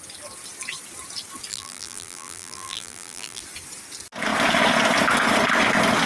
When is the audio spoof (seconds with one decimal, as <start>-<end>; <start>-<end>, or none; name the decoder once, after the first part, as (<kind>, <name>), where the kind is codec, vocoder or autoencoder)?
1.5-3.4 (vocoder, BigVGAN v2)